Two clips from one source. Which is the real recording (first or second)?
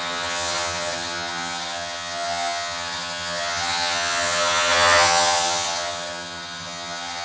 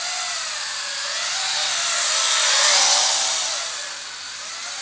second